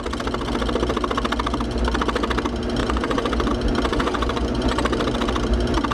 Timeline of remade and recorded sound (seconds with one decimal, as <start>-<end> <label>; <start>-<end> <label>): 0.0-2.8 recorded; 2.8-3.5 remade; 3.5-3.9 recorded; 3.9-4.8 remade; 4.8-5.9 recorded